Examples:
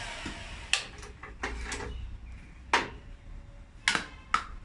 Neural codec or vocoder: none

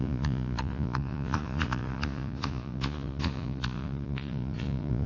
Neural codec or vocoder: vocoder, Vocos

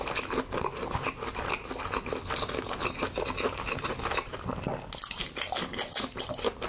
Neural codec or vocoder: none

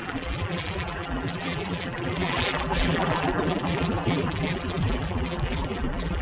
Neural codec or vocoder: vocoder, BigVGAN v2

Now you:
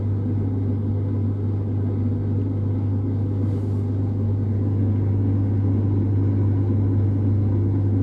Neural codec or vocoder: none